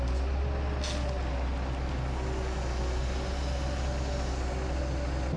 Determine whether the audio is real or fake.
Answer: real